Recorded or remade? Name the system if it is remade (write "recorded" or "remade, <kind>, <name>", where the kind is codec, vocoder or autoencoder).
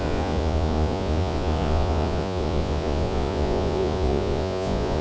remade, vocoder, Vocos